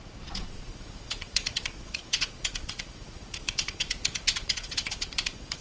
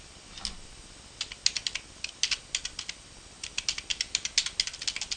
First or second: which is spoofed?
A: first